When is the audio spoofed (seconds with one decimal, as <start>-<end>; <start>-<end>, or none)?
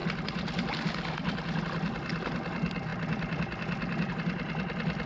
none